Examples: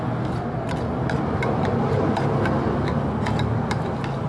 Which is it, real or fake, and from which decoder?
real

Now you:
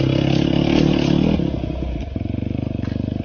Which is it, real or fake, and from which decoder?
real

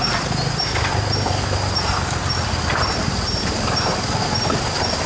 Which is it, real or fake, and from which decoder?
real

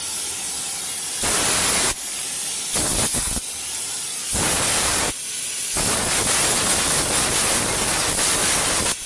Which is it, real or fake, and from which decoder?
real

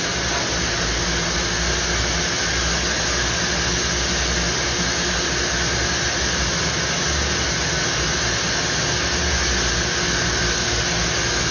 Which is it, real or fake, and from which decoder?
real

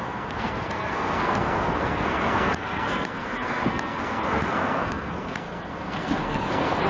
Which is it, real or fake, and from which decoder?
fake, codec, SNAC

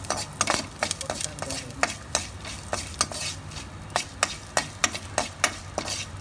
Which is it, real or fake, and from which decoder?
real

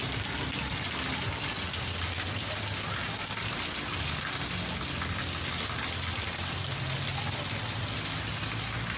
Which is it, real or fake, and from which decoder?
real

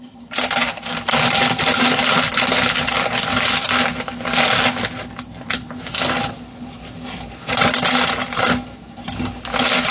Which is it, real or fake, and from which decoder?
real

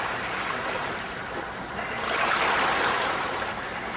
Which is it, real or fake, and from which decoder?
real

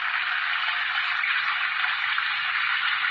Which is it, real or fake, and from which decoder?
real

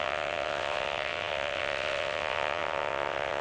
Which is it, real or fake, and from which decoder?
fake, vocoder, WaveNeXt